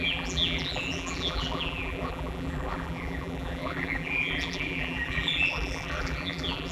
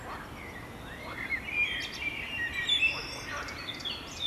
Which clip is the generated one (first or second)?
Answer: first